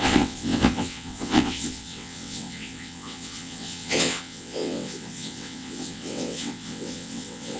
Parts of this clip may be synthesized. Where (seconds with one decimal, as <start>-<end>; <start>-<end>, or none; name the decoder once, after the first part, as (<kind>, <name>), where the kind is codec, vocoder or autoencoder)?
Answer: 0.0-7.6 (vocoder, WaveNeXt)